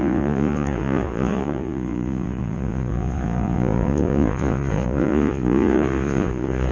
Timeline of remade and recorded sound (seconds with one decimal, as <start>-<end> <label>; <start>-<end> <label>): 0.0-6.7 remade